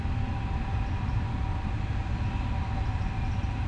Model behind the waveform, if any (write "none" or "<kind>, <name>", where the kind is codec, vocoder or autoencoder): none